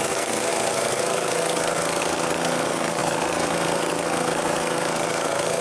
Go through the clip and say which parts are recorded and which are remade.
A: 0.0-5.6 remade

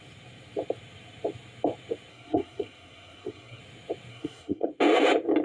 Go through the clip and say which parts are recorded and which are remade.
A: 0.0-2.1 recorded; 2.1-3.6 remade; 3.6-4.1 recorded; 4.1-4.7 remade; 4.7-5.4 recorded

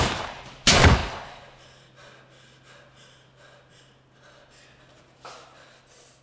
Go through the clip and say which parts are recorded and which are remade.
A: 0.0-6.2 recorded

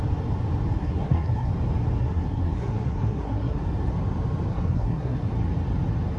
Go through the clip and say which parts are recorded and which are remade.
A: 0.0-0.8 recorded; 0.8-1.5 remade; 1.5-2.0 recorded; 2.0-3.6 remade; 3.6-4.5 recorded; 4.5-5.3 remade; 5.3-6.2 recorded

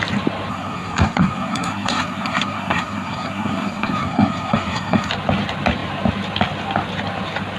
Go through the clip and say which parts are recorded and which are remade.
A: 0.0-0.5 recorded; 0.5-5.1 remade; 5.1-7.6 recorded

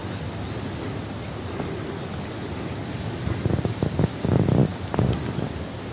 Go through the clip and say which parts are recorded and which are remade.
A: 0.0-5.9 recorded

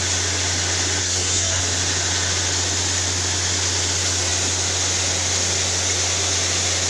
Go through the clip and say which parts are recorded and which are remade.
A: 0.0-1.0 recorded; 1.0-1.6 remade; 1.6-6.9 recorded